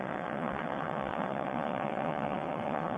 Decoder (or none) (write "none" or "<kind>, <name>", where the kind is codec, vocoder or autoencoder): vocoder, WaveNeXt